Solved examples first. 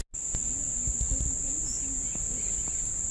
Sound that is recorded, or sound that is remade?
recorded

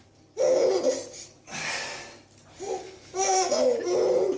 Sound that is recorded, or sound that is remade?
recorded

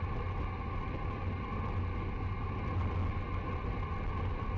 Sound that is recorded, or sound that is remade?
recorded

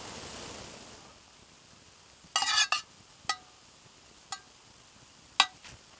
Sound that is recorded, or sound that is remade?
recorded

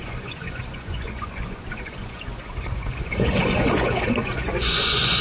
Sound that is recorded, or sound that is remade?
remade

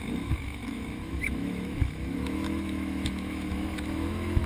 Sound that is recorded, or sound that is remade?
remade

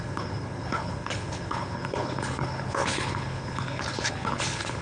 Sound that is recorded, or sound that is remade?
remade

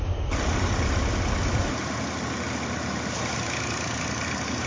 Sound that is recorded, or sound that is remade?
recorded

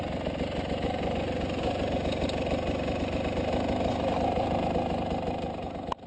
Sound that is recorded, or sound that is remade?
recorded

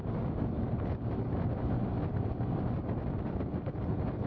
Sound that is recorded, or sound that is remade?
recorded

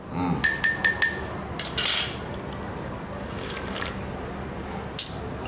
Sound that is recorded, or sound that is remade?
recorded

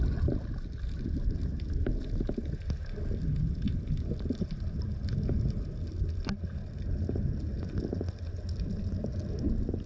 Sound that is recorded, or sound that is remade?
recorded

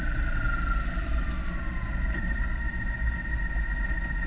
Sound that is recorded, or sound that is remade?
recorded